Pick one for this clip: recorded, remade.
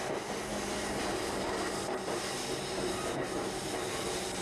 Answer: recorded